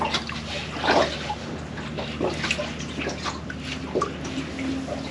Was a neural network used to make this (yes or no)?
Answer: no